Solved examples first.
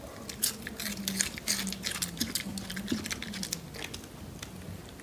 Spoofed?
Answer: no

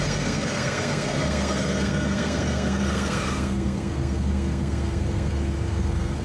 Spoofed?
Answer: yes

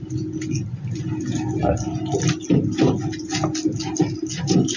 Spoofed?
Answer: no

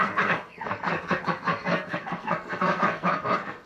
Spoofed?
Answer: yes